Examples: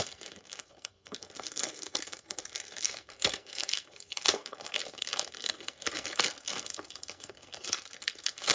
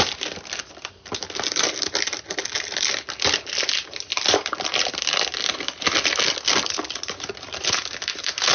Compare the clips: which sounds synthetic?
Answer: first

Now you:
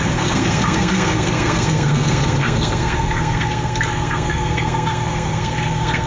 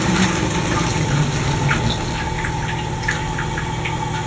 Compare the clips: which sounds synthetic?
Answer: first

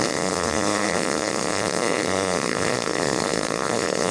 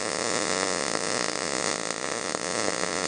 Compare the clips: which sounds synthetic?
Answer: first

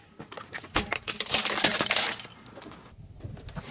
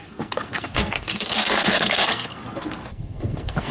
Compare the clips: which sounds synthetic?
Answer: second